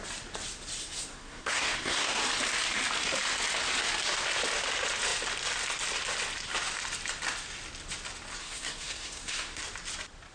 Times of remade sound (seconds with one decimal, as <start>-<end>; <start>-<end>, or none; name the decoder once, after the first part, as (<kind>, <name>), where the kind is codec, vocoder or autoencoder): 0.8-2.2 (codec, SNAC); 8.4-9.6